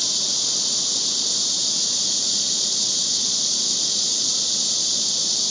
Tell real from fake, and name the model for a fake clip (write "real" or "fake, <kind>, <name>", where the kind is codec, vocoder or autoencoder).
real